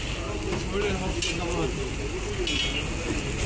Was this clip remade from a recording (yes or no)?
no